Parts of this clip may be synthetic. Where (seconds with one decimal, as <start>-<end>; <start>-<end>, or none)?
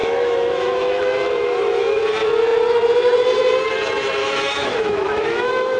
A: 0.0-2.0; 4.2-5.8